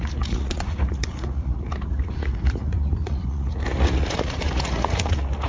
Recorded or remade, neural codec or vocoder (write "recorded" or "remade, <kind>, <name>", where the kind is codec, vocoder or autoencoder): remade, vocoder, Vocos